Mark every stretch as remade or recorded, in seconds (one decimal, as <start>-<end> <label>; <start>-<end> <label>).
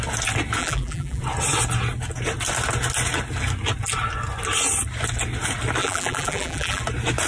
0.0-0.6 recorded; 0.6-1.2 remade; 1.2-5.8 recorded; 5.8-6.8 remade; 6.8-7.3 recorded